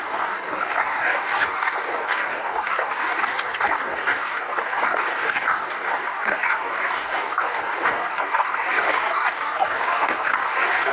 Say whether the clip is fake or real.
fake